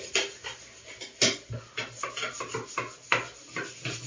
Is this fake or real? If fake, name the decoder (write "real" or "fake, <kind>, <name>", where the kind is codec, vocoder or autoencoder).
real